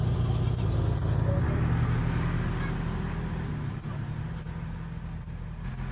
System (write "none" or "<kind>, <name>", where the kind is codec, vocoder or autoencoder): none